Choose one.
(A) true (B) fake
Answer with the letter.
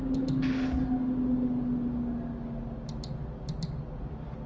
A